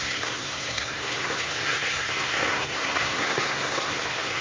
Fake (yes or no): yes